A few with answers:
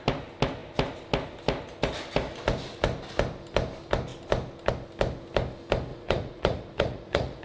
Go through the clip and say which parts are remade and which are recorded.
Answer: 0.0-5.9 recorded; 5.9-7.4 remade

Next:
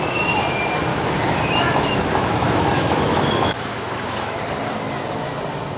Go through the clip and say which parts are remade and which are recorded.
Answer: 0.0-0.9 recorded; 0.9-4.4 remade; 4.4-5.8 recorded

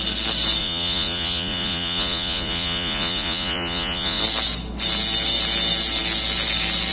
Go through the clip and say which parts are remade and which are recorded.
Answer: 0.0-0.6 recorded; 0.6-4.2 remade; 4.2-6.9 recorded

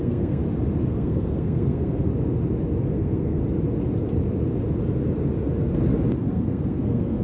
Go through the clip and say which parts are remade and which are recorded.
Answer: 0.0-0.4 remade; 0.4-0.9 recorded; 0.9-2.1 remade; 2.1-2.9 recorded; 2.9-3.4 remade; 3.4-6.3 recorded; 6.3-7.2 remade

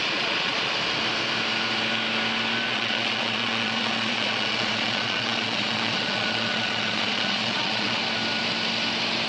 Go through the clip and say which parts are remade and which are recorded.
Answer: 0.0-0.7 remade; 0.7-2.7 recorded; 2.7-8.0 remade; 8.0-9.3 recorded

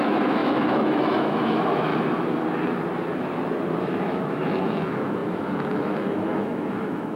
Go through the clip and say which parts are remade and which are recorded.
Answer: 0.0-1.9 remade; 1.9-3.8 recorded; 3.8-7.2 remade

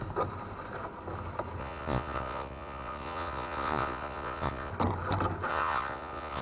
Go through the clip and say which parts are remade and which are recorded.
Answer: 0.0-1.6 recorded; 1.6-4.7 remade; 4.7-5.5 recorded; 5.5-6.4 remade

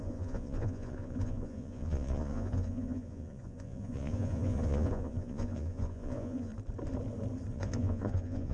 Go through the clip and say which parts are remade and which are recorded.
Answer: 0.0-6.5 remade; 6.5-7.5 recorded; 7.5-8.5 remade